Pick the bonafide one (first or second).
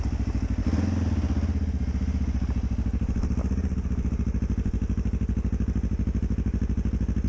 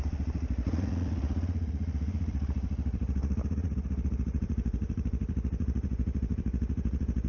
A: first